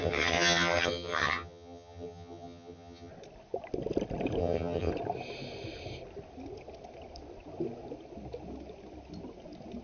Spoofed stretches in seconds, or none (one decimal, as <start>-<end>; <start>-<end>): 0.0-3.1; 4.4-4.9